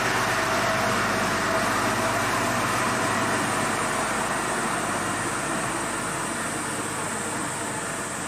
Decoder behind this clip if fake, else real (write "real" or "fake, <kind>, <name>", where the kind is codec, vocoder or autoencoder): real